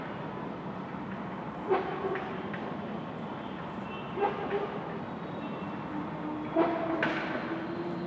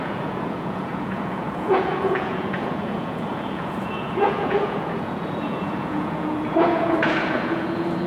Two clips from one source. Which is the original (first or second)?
first